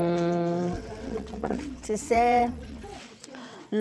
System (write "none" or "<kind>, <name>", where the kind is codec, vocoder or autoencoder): vocoder, WaveNeXt